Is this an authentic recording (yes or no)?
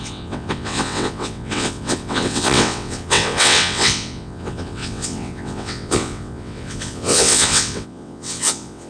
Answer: no